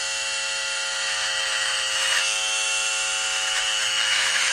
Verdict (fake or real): fake